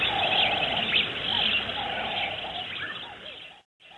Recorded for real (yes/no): yes